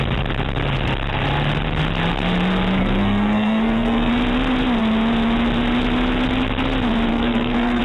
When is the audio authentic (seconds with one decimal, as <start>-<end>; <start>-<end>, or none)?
0.0-2.8; 4.1-7.1